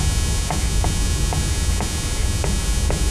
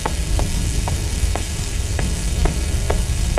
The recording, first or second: first